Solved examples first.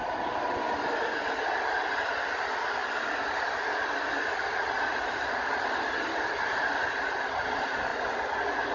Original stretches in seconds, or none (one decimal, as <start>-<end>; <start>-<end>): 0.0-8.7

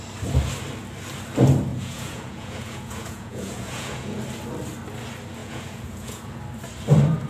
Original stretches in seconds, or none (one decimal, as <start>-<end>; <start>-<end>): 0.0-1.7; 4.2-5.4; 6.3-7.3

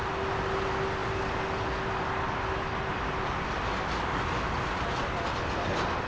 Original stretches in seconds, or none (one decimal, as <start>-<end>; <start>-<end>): 0.0-6.1

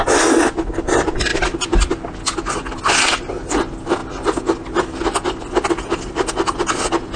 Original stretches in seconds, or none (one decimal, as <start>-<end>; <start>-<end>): 0.0-7.2